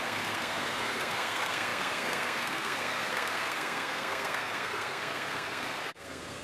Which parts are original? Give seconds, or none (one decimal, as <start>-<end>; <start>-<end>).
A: none

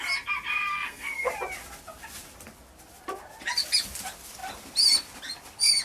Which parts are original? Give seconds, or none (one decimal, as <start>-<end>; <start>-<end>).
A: 0.0-0.7; 1.3-5.8

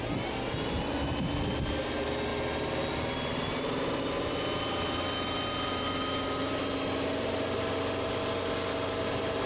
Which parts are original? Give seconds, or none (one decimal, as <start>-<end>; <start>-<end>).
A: 0.0-9.5

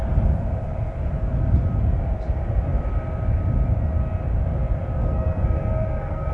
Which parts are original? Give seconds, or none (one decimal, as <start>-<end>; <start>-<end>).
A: 0.0-5.0

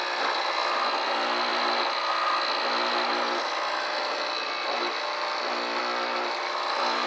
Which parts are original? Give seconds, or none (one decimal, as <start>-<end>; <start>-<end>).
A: 0.0-7.1

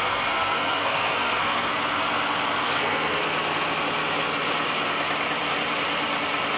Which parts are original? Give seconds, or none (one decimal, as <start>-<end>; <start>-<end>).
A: 1.7-2.6; 3.2-6.6